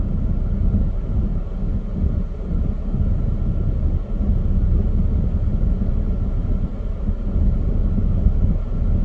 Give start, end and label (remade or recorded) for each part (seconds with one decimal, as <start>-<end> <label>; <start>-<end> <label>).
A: 0.0-9.0 recorded